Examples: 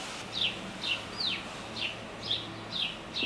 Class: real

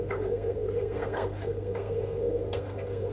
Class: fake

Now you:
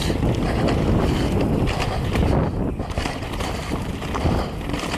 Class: real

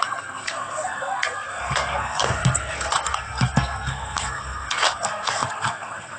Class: fake